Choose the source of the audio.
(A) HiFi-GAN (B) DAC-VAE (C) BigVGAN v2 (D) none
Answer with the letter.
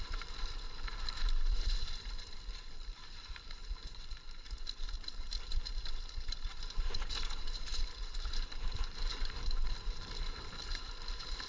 C